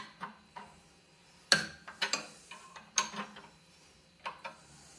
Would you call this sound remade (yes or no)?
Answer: no